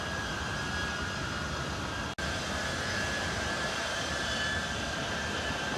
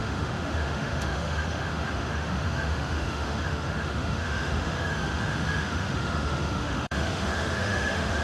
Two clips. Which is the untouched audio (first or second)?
first